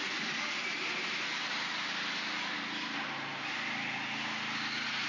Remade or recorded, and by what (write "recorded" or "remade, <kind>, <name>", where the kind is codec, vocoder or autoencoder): recorded